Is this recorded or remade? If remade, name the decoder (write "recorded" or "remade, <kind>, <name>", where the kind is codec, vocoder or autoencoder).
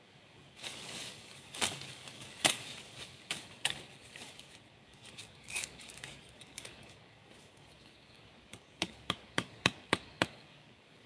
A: remade, codec, DAC